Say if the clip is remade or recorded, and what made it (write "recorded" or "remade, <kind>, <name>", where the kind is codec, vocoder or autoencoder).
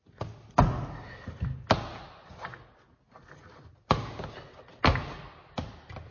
recorded